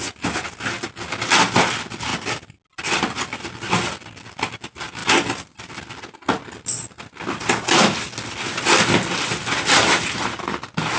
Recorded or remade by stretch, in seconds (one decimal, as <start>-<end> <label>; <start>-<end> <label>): 0.0-11.0 recorded